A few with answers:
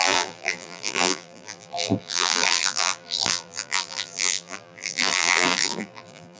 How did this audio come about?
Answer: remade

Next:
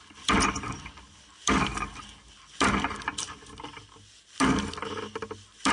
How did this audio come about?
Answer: recorded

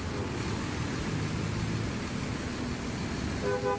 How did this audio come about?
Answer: recorded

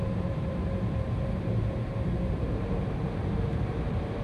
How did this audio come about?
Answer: remade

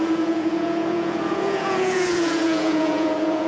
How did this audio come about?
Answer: remade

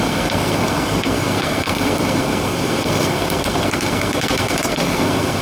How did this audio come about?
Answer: remade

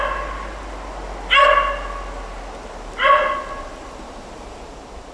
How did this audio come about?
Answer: recorded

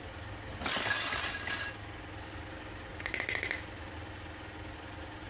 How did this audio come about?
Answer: recorded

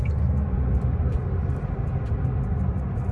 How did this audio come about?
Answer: recorded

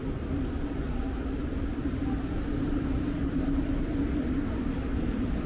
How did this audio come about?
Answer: remade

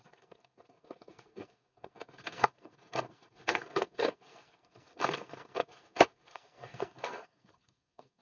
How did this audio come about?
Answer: remade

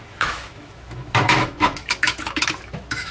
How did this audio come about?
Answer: remade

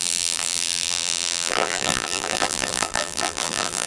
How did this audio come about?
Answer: remade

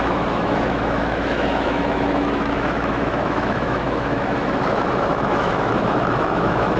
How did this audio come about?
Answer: remade